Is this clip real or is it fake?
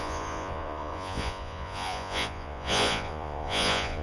fake